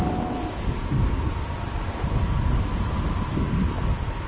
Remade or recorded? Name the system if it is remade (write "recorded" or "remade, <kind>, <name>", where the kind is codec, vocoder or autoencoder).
recorded